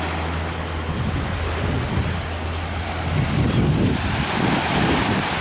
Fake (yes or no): no